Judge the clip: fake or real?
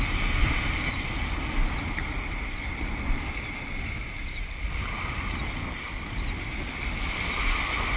real